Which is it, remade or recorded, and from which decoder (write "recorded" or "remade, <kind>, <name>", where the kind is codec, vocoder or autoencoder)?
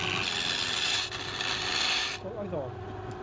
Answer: recorded